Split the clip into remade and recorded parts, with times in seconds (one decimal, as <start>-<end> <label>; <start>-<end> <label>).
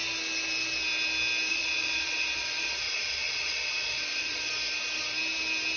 0.0-1.5 recorded; 1.5-4.5 remade; 4.5-5.8 recorded